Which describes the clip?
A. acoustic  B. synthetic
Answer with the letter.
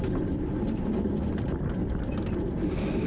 A